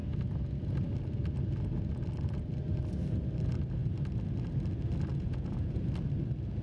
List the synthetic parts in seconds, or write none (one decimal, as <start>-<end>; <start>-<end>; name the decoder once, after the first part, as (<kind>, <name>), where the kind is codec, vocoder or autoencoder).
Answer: 5.1-5.8 (vocoder, Vocos)